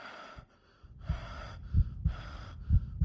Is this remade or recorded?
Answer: recorded